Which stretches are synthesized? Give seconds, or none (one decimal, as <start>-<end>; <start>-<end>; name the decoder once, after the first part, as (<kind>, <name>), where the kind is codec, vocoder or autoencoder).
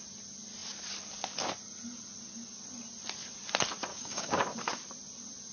3.9-4.4 (codec, DAC)